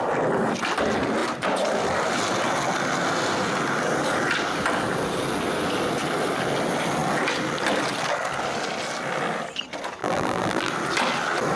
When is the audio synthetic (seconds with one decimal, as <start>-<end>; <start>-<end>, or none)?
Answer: 10.0-10.7